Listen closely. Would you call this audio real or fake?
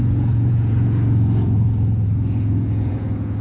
fake